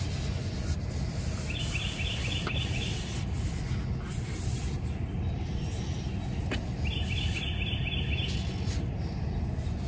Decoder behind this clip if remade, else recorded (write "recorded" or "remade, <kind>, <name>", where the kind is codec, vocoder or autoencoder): recorded